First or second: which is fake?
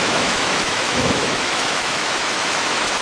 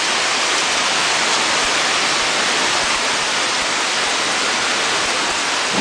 first